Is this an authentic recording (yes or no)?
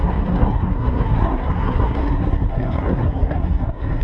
no